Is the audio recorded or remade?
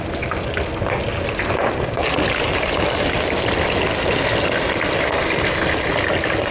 recorded